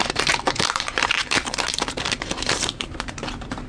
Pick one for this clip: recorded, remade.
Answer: remade